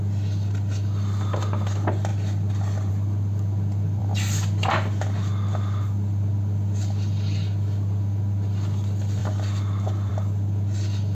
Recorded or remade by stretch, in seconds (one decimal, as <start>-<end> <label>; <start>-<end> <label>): 0.0-11.1 recorded